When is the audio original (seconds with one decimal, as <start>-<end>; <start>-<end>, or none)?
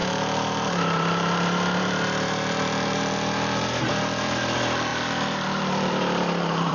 none